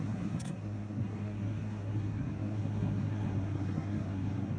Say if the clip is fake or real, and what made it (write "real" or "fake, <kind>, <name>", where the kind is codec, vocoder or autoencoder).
fake, codec, SNAC